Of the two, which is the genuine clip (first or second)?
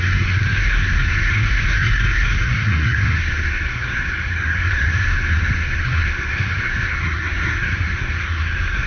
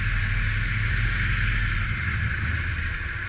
second